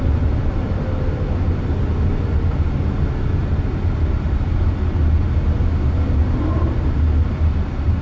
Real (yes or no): yes